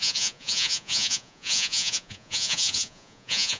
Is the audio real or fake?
fake